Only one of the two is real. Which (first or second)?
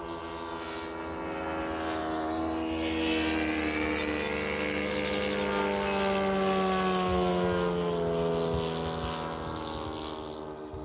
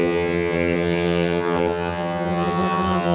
first